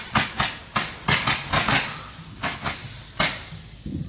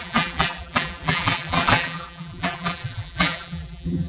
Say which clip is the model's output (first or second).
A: second